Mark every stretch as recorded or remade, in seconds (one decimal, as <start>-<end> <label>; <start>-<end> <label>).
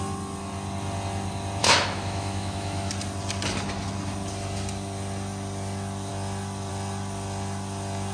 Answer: 0.0-1.6 recorded; 1.6-2.9 remade; 2.9-8.1 recorded